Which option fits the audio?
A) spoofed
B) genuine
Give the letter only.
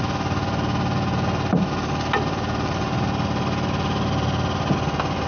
B